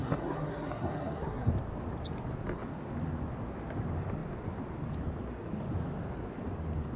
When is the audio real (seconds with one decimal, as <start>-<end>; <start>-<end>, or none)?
1.5-7.0